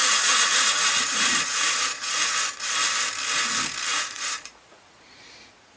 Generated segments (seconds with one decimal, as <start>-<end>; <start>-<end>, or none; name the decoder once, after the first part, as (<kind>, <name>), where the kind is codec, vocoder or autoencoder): 0.0-2.8 (vocoder, Vocos); 4.0-5.8